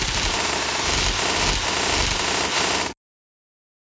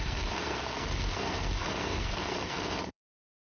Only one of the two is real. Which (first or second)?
first